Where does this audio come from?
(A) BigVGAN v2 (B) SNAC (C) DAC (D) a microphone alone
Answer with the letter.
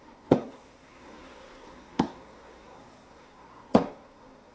B